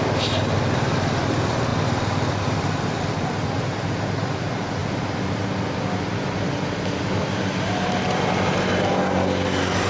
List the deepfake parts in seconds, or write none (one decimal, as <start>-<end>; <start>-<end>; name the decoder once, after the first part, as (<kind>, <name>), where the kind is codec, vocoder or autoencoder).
none